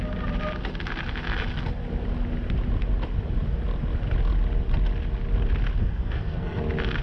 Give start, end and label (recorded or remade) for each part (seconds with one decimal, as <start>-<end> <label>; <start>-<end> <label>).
0.0-5.8 recorded; 5.8-6.6 remade; 6.6-7.0 recorded